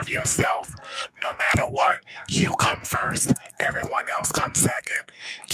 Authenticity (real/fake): fake